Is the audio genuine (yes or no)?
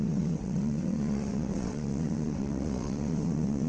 no